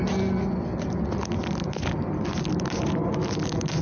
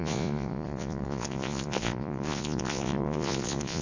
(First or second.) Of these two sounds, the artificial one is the second